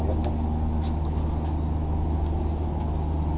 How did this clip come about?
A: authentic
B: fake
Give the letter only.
A